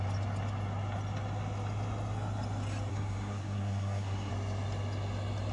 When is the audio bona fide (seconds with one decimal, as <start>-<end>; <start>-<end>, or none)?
0.0-2.9; 4.3-5.5